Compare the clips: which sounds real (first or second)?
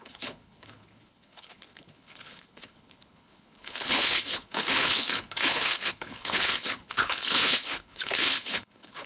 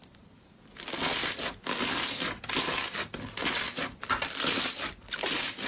second